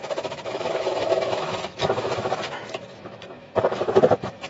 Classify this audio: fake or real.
fake